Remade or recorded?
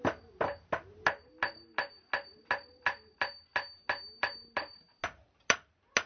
recorded